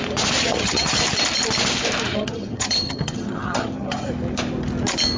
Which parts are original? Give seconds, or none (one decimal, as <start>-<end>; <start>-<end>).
0.0-0.4; 1.0-2.1; 4.1-5.2